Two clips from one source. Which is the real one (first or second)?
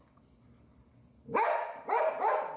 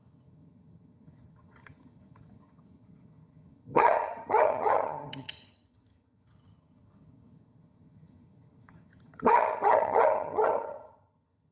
first